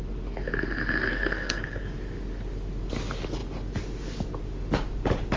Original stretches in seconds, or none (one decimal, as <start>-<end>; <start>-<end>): 0.0-1.1; 1.8-5.4